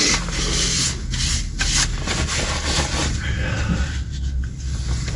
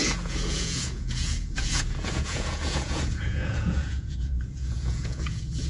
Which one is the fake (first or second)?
second